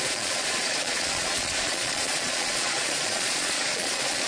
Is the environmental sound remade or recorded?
remade